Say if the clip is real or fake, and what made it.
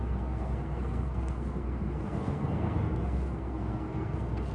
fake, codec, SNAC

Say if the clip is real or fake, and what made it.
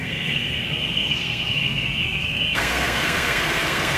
fake, codec, SNAC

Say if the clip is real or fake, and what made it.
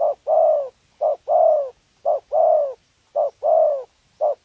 real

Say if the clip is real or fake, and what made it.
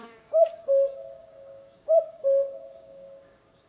fake, codec, DAC